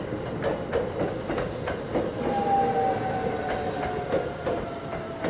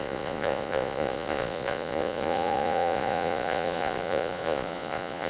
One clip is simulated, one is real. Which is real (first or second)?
first